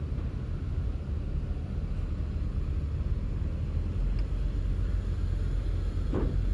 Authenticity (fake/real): real